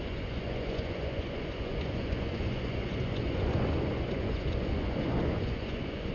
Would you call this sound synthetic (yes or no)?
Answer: yes